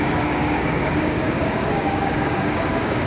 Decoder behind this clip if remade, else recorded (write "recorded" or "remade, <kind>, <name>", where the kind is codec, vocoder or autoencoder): remade, codec, DAC